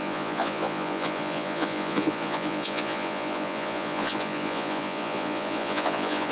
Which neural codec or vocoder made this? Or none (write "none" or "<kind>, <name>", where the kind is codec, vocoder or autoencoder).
vocoder, Vocos